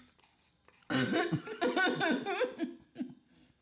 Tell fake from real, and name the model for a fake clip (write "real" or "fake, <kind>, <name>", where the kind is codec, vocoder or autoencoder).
real